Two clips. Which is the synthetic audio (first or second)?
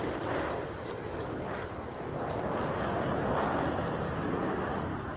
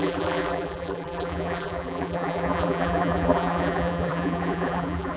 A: second